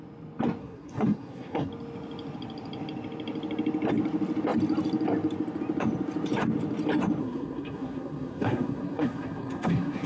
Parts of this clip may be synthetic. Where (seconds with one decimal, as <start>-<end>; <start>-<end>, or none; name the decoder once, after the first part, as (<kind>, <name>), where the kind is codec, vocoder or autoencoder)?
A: 0.6-1.7 (codec, SNAC); 7.2-10.1